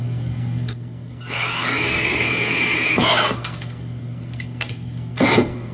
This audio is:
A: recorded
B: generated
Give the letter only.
B